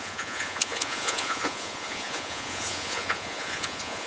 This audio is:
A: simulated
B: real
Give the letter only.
A